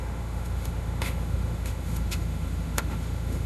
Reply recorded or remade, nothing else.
remade